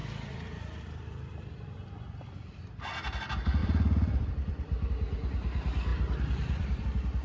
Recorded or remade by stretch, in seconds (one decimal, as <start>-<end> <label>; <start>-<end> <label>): 0.0-2.6 remade; 2.6-3.6 recorded; 3.6-4.9 remade; 4.9-5.9 recorded; 5.9-6.8 remade; 6.8-7.2 recorded